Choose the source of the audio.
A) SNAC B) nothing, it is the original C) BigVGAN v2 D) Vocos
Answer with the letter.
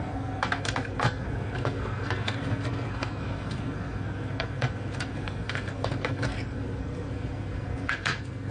A